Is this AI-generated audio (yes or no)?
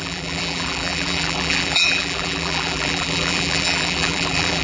yes